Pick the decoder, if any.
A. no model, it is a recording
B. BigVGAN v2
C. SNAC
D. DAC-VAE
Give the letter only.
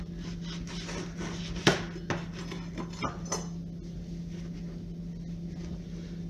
A